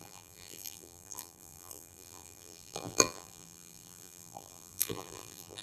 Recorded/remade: remade